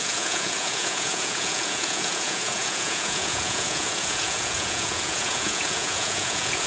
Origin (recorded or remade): remade